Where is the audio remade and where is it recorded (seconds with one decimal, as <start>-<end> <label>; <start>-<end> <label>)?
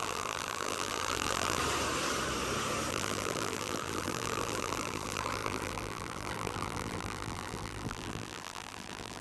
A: 0.0-1.6 remade; 1.6-2.9 recorded; 2.9-9.2 remade